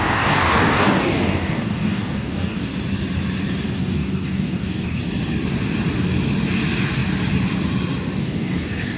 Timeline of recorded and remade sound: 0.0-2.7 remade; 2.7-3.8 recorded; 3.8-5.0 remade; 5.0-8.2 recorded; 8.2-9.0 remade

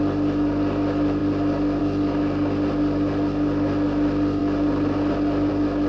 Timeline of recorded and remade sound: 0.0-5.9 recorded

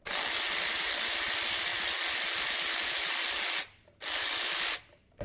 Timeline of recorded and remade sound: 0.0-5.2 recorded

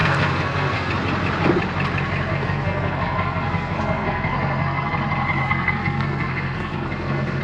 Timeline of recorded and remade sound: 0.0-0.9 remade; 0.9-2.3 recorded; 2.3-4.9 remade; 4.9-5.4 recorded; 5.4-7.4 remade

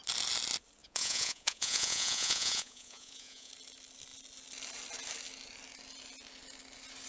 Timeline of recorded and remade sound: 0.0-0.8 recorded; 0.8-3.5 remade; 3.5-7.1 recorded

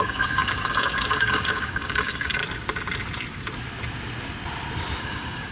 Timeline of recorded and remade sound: 0.0-2.4 remade; 2.4-5.0 recorded; 5.0-5.5 remade